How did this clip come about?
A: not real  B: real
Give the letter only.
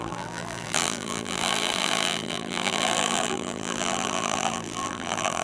A